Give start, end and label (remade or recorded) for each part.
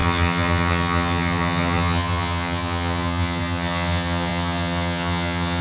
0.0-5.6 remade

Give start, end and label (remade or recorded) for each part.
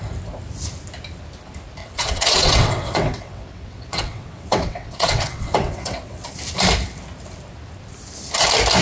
0.0-1.8 recorded; 1.8-6.3 remade; 6.3-8.8 recorded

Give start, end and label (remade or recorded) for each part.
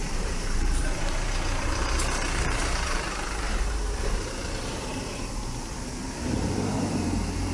0.0-7.5 remade